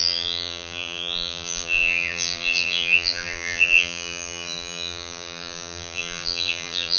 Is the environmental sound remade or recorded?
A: remade